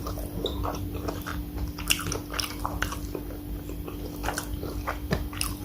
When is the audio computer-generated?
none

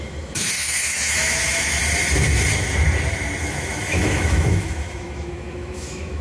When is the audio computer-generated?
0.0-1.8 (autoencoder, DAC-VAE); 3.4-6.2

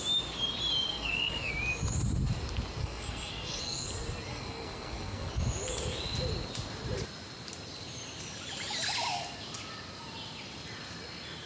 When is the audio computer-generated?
0.9-1.5 (codec, SNAC); 2.8-3.9; 4.3-5.3

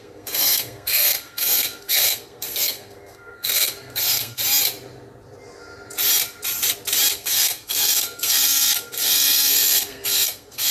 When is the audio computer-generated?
0.0-4.4 (codec, SNAC); 7.1-10.7